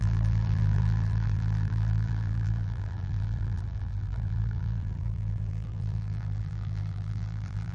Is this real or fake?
fake